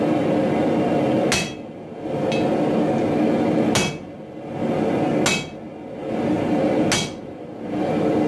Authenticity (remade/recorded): recorded